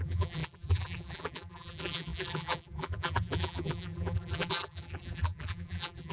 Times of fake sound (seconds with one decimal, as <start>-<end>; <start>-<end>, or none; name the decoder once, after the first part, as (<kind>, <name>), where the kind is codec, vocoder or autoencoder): 0.0-6.1 (vocoder, BigVGAN v2)

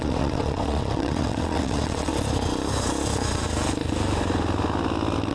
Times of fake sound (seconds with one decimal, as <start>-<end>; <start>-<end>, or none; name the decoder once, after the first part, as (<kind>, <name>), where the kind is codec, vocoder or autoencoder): 0.0-2.1 (vocoder, WaveNeXt)

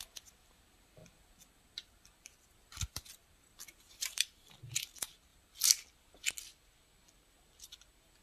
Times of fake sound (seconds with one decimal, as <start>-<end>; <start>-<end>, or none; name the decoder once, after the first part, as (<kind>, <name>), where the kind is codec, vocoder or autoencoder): 1.0-4.5 (vocoder, BigVGAN v2); 5.3-6.3

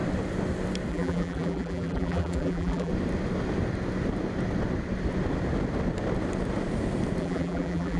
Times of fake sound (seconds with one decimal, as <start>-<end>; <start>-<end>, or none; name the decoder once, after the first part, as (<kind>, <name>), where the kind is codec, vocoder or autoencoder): 0.9-2.9 (vocoder, BigVGAN v2); 7.2-8.0

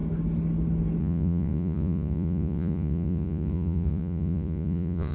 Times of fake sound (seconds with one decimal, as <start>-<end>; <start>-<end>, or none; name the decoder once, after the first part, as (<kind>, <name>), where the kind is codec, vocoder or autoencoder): 1.0-5.1 (vocoder, Vocos)

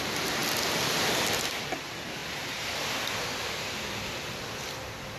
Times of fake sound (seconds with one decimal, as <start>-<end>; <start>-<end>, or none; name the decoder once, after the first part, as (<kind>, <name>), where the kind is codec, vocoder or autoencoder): 2.2-4.1 (vocoder, BigVGAN v2)